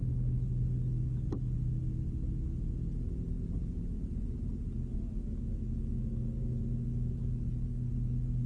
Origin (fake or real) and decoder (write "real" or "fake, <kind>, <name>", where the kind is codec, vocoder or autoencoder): real